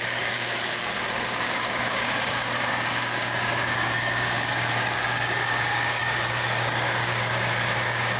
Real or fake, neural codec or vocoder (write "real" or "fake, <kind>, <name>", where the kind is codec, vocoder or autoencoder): fake, codec, DAC